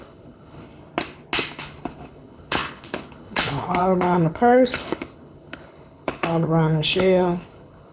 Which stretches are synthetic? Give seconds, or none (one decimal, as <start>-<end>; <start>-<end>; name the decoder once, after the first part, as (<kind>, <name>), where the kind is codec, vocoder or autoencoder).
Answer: 0.0-0.9 (codec, HILCodec); 1.6-7.9